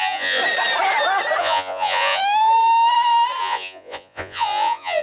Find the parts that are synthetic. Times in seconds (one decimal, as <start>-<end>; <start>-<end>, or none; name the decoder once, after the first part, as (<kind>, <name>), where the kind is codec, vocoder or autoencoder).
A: 0.0-0.4 (vocoder, Vocos); 1.4-2.2; 3.4-5.0